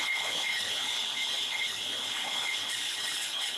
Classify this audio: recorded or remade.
remade